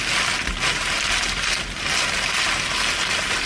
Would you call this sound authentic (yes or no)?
yes